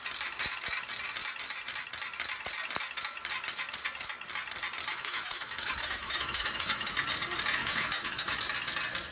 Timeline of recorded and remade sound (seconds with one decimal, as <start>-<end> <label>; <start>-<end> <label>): 0.0-4.9 recorded; 4.9-6.9 remade; 6.9-7.6 recorded; 7.6-8.4 remade; 8.4-9.1 recorded